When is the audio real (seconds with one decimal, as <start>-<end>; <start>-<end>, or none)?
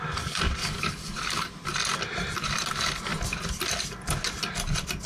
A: 0.0-0.6; 1.5-5.1